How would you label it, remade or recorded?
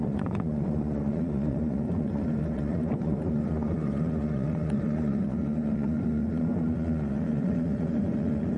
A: remade